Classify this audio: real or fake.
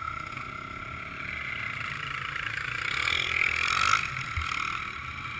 real